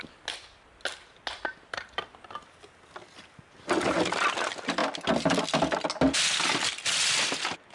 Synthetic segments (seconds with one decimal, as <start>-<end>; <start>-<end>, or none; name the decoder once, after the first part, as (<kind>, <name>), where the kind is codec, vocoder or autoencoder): none